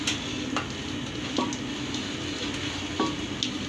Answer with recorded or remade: recorded